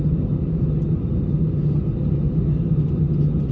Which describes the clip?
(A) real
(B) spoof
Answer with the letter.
A